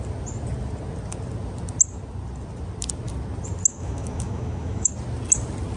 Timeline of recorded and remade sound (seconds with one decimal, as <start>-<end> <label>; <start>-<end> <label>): 0.0-3.7 recorded; 3.7-4.9 remade; 4.9-5.8 recorded